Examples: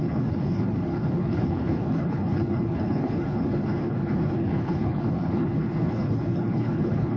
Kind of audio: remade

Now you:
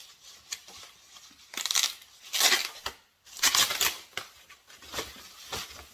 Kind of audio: remade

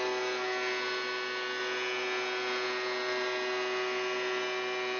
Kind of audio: recorded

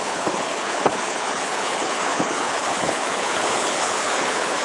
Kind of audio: remade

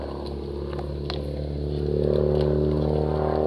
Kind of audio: recorded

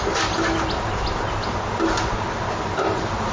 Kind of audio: recorded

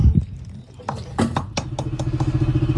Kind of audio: recorded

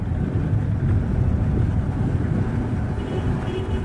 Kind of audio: recorded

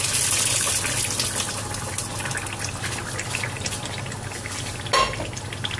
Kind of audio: recorded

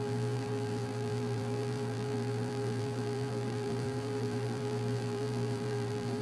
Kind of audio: remade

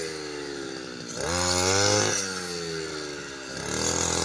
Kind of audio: recorded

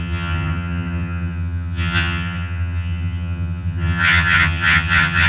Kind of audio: remade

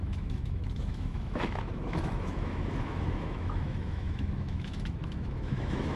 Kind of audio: remade